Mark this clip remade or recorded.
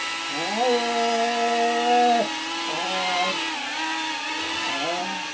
recorded